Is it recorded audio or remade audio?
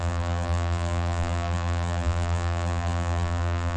remade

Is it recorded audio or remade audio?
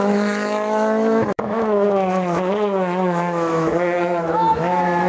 remade